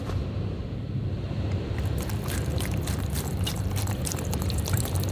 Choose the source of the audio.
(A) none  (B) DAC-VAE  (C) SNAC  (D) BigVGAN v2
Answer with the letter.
D